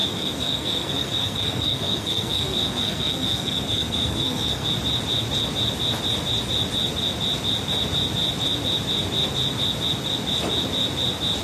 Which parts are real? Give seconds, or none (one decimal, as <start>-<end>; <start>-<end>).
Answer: 4.7-11.4